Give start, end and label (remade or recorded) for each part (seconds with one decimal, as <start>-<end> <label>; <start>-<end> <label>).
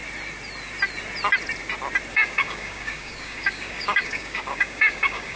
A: 0.0-2.1 recorded; 2.1-5.4 remade